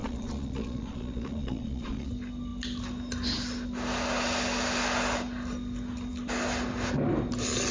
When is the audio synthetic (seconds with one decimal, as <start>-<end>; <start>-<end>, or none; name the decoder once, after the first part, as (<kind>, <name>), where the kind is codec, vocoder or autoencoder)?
0.0-2.1 (vocoder, Vocos)